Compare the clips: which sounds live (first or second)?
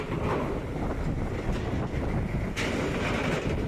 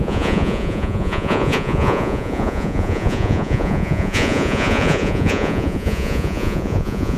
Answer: first